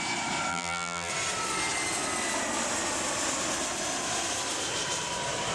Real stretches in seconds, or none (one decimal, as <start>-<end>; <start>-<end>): 0.0-0.5; 1.1-5.5